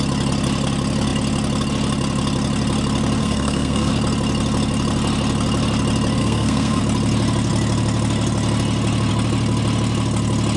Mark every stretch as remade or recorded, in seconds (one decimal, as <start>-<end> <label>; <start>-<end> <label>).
0.0-3.2 recorded; 3.2-3.9 remade; 3.9-6.2 recorded; 6.2-6.8 remade; 6.8-10.6 recorded